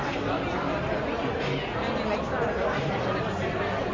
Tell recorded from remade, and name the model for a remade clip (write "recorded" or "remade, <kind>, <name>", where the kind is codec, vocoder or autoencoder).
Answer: recorded